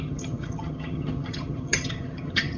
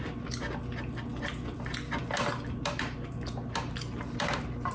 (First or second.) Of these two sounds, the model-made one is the first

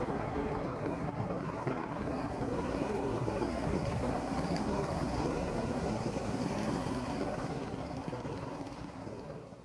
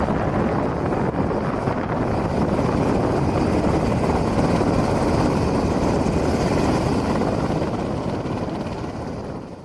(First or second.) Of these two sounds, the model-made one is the first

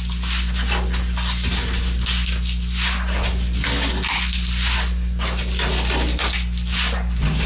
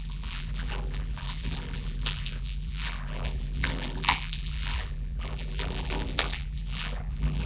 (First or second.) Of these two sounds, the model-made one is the second